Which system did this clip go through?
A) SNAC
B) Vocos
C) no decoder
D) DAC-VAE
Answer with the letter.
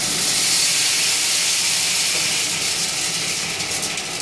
C